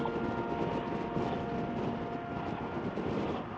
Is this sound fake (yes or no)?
no